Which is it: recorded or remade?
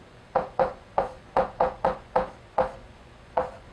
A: remade